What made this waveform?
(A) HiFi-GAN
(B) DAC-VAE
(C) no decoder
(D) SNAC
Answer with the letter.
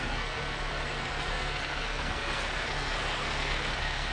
D